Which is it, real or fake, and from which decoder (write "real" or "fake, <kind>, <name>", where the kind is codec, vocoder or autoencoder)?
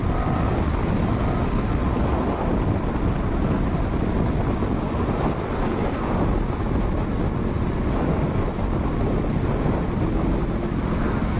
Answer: real